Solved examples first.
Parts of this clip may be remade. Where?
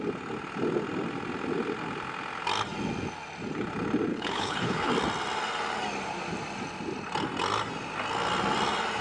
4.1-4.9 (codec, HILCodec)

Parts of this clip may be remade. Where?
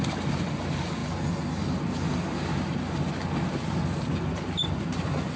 none